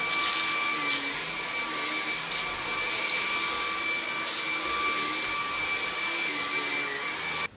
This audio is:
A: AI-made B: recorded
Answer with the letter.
B